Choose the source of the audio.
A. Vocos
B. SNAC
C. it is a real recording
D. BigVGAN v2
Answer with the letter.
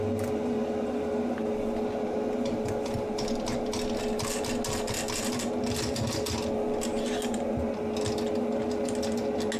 C